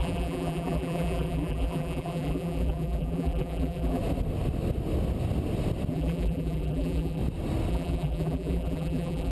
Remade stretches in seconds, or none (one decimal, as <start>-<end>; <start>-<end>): 0.0-4.0; 5.9-7.2; 7.7-9.3